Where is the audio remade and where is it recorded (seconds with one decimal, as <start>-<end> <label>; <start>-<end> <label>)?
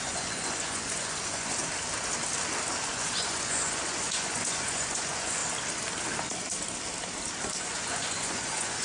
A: 0.0-1.6 remade; 1.6-2.9 recorded; 2.9-5.4 remade; 5.4-7.6 recorded; 7.6-8.8 remade